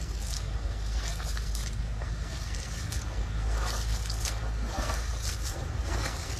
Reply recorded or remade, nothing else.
remade